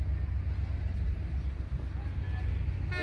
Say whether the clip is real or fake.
real